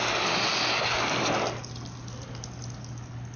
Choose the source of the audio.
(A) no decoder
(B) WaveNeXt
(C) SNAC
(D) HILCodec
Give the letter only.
A